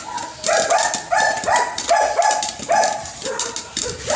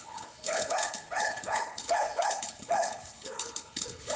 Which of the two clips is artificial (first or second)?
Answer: second